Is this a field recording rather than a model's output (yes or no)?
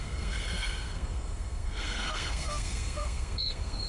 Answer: no